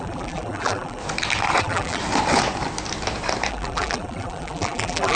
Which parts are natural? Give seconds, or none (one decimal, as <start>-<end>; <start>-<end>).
1.0-1.6; 2.0-3.5